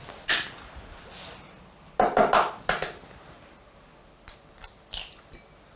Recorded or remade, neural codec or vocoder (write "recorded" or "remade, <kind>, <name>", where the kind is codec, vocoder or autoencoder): recorded